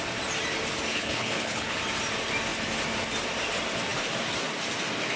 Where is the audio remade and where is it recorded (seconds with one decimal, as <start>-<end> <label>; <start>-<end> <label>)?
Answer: 0.0-0.9 recorded; 0.9-1.8 remade; 1.8-5.2 recorded